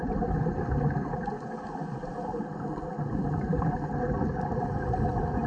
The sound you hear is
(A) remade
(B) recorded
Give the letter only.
B